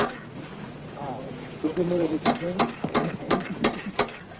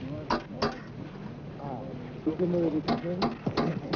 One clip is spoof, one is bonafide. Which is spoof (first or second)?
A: first